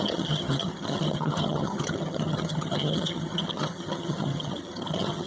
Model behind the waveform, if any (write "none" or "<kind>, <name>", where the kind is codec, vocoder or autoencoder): vocoder, HiFi-GAN